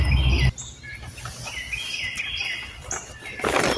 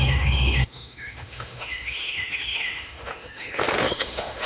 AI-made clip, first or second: second